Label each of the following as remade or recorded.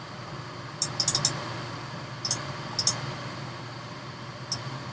recorded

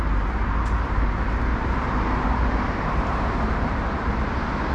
remade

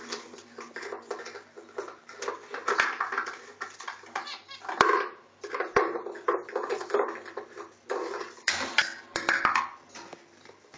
recorded